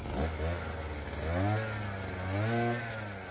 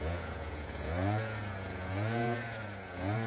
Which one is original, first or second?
first